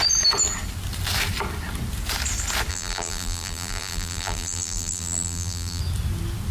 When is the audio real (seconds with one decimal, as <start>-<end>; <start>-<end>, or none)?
0.0-2.7; 5.8-6.5